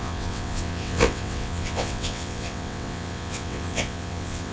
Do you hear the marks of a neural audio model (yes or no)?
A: yes